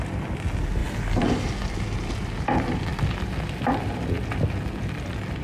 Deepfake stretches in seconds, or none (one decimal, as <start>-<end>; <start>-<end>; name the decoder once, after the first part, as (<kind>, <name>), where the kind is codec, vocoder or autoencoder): 0.0-5.4 (vocoder, BigVGAN v2)